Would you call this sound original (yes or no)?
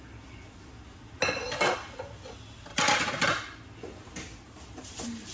yes